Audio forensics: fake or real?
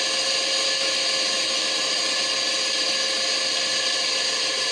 real